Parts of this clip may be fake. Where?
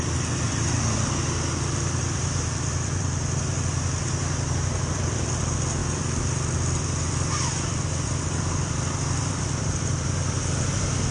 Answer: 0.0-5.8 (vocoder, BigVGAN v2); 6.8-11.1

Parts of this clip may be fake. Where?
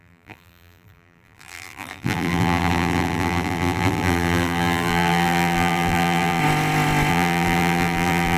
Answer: 0.0-6.4 (vocoder, BigVGAN v2); 7.1-8.4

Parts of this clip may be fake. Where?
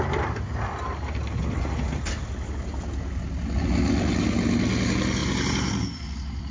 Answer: 5.2-6.0 (vocoder, BigVGAN v2)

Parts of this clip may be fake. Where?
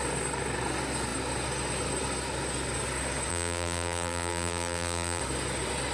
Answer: 3.3-5.2 (vocoder, BigVGAN v2)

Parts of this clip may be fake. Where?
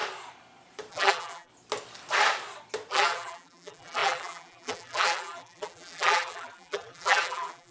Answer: 0.9-1.5 (vocoder, BigVGAN v2); 2.9-7.7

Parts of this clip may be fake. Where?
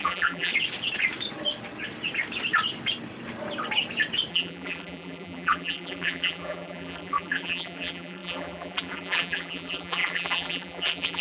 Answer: 0.0-0.5 (vocoder, BigVGAN v2); 4.3-11.2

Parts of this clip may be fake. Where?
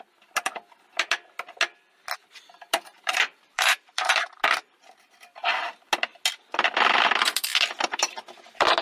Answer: 2.9-4.3 (vocoder, BigVGAN v2)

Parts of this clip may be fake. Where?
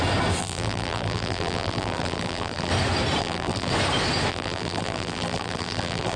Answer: 0.4-2.7 (vocoder, BigVGAN v2); 3.2-3.7; 4.3-6.2